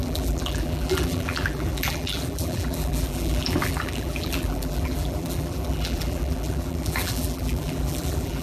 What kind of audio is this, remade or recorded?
remade